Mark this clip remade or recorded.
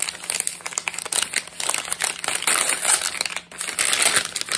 recorded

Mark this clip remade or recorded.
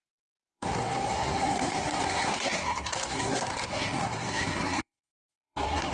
remade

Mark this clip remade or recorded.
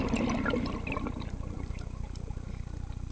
remade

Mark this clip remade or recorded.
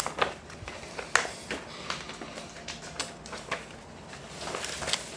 recorded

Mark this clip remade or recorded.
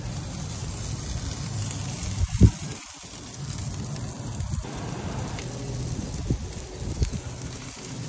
recorded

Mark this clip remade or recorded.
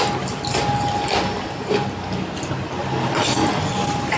remade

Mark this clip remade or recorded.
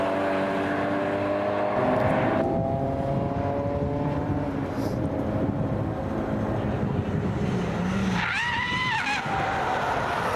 recorded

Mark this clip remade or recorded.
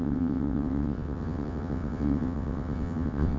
remade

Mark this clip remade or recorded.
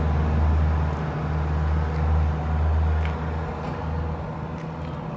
recorded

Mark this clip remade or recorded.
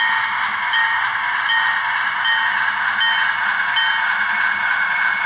recorded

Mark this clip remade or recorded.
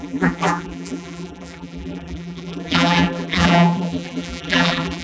remade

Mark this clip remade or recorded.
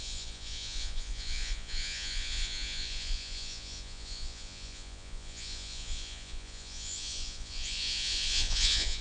remade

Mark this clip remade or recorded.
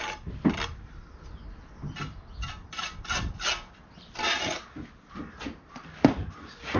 recorded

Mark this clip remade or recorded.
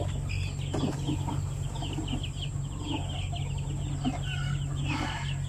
remade